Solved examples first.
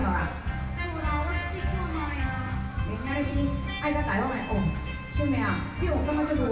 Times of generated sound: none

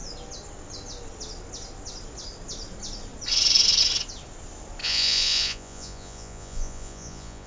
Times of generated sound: 4.8-7.5 (vocoder, Vocos)

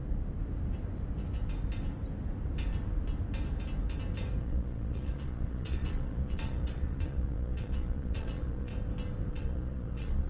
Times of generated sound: 4.4-8.7 (vocoder, Vocos); 9.3-10.3

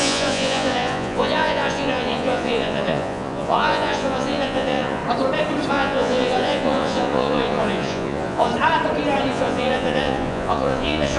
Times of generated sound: 0.0-5.0 (vocoder, Vocos); 5.7-8.5; 9.3-11.2

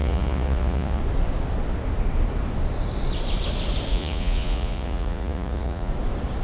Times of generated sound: 0.0-1.0 (vocoder, Vocos); 3.9-5.9

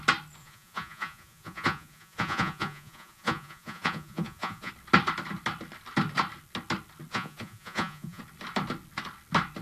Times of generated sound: 0.4-4.7 (vocoder, Vocos); 7.1-8.2

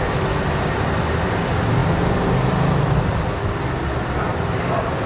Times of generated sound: none

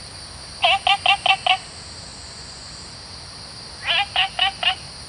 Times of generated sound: 2.1-2.7 (vocoder, Vocos)